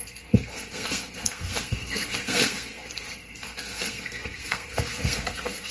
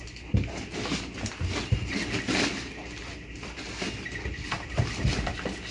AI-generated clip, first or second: first